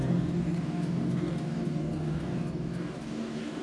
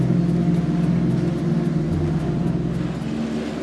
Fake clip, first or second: first